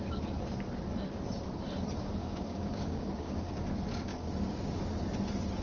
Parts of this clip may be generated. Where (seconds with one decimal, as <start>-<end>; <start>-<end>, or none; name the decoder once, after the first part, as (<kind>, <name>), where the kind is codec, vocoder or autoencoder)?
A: 2.2-3.6 (codec, DAC); 4.1-4.7